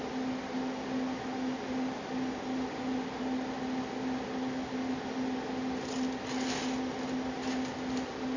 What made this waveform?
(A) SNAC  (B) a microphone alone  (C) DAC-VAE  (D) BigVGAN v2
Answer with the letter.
B